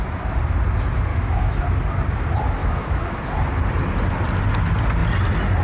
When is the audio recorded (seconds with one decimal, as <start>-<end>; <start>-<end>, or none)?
0.0-1.1; 1.6-2.6; 3.2-5.6